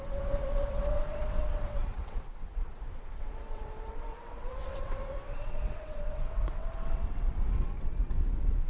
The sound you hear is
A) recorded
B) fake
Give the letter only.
B